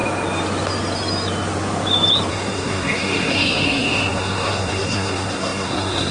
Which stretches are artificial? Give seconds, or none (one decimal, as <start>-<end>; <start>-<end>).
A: 2.3-6.1